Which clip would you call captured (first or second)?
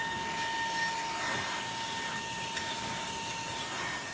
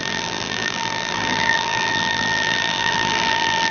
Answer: first